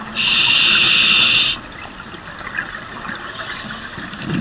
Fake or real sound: real